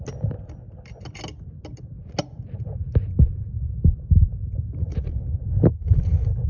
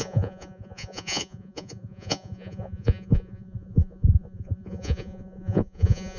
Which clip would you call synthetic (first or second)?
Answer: second